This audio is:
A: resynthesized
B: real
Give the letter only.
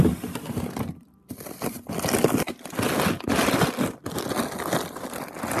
B